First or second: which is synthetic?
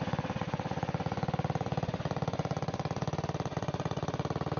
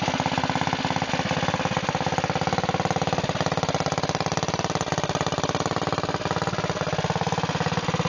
first